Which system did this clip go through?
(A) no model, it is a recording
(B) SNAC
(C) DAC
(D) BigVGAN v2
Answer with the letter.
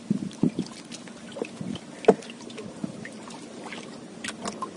A